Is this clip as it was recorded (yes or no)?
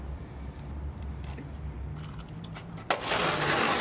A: yes